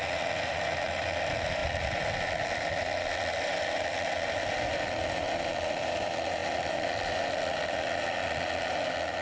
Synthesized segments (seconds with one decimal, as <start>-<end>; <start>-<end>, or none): none